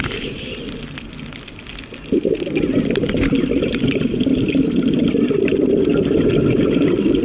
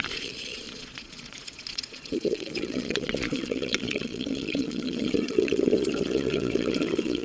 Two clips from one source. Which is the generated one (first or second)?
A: second